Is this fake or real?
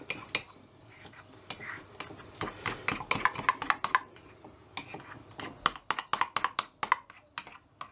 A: real